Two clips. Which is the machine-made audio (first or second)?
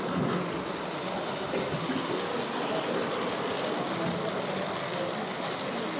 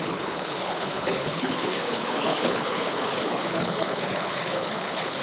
second